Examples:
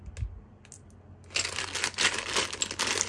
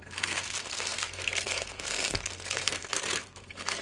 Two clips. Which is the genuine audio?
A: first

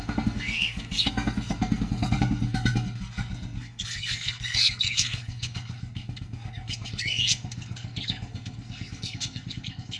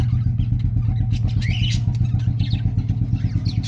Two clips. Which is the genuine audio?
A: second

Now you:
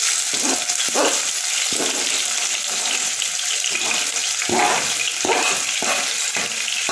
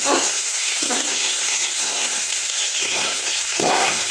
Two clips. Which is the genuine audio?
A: first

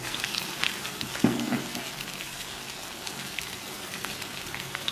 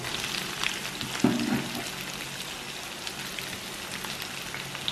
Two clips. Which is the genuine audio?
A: second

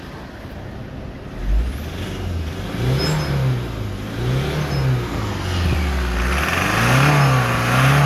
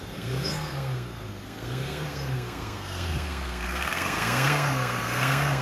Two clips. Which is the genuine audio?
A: first